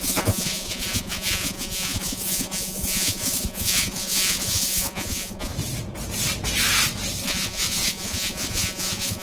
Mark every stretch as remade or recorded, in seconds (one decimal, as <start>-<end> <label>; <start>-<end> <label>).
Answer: 0.0-5.5 remade; 5.5-7.2 recorded; 7.2-9.2 remade